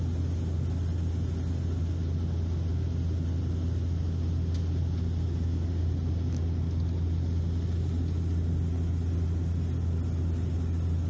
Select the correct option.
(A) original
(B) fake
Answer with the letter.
A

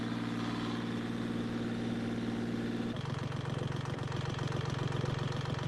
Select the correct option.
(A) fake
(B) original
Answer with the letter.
B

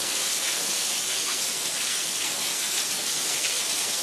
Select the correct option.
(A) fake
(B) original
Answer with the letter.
A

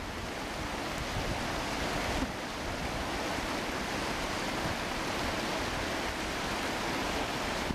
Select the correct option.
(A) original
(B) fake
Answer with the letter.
A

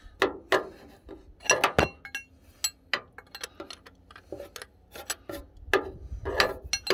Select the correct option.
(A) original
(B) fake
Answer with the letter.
A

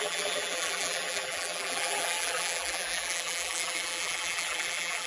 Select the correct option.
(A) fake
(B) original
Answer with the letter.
A